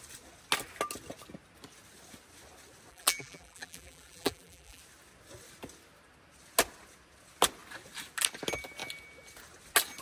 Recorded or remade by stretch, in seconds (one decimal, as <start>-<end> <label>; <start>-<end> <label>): 0.0-2.9 recorded; 2.9-4.8 remade; 4.8-10.0 recorded